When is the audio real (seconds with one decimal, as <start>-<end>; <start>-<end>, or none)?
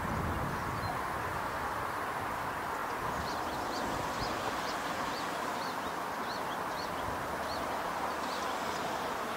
0.0-9.4